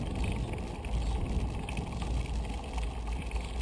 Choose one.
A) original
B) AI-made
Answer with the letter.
A